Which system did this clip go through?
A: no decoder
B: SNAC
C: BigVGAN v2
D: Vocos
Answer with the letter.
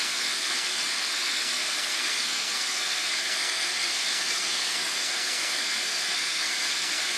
B